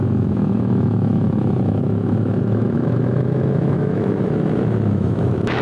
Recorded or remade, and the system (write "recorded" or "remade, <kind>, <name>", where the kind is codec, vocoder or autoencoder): remade, autoencoder, DAC-VAE